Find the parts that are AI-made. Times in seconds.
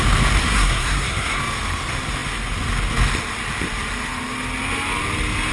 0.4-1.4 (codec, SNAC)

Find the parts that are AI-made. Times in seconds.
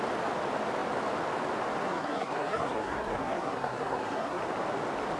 1.8-4.4 (codec, SNAC)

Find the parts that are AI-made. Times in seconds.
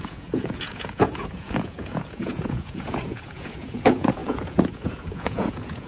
0.0-5.9 (vocoder, Vocos)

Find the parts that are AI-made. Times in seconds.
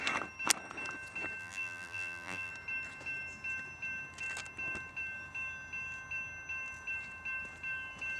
1.4-2.5 (vocoder, BigVGAN v2)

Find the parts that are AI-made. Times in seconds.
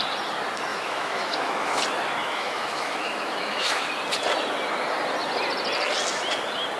0.7-1.8 (autoencoder, DAC-VAE); 2.2-3.9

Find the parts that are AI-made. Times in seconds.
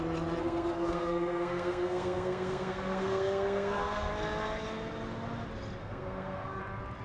0.4-4.1 (codec, SNAC); 5.8-6.6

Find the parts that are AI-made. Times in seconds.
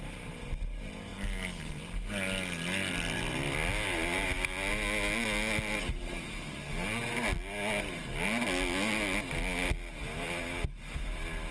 none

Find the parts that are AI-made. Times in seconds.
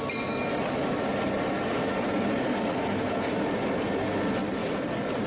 none